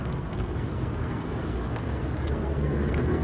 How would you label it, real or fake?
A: fake